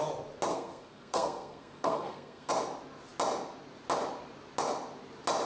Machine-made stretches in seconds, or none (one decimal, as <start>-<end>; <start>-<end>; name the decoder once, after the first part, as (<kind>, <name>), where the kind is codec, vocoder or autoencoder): 0.5-2.5 (codec, SNAC)